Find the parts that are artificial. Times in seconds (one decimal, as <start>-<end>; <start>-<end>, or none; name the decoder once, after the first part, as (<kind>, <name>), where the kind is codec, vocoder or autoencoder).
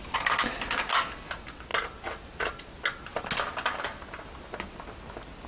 none